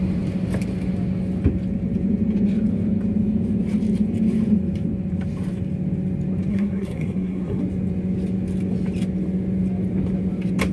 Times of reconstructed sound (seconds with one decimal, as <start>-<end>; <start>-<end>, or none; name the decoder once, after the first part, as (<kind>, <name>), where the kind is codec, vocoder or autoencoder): 6.5-7.6 (codec, SNAC)